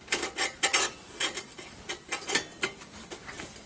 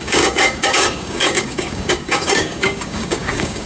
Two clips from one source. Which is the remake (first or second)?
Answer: second